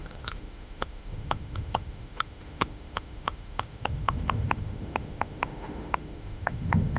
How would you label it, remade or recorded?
remade